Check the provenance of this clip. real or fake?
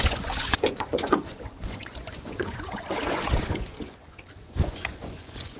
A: fake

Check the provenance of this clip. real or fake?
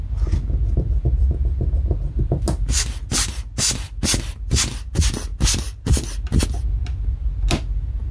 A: real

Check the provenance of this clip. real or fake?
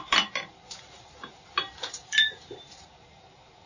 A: fake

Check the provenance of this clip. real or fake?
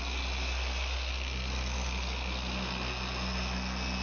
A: real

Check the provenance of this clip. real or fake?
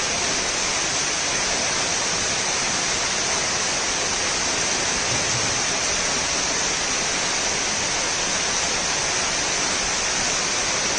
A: real